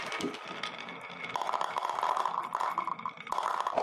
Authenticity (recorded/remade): recorded